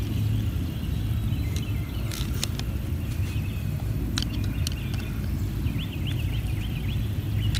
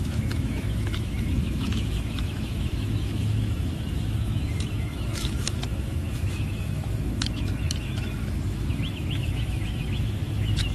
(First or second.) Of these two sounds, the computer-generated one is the second